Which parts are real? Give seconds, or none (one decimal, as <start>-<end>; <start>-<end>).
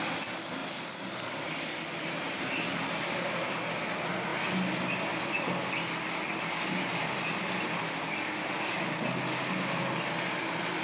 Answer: 0.0-0.6; 2.4-10.8